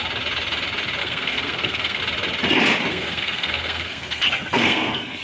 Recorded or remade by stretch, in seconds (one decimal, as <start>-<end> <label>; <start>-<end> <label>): 0.0-1.0 recorded; 1.0-2.0 remade; 2.0-2.9 recorded; 2.9-5.2 remade